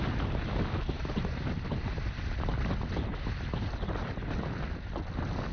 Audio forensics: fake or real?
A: real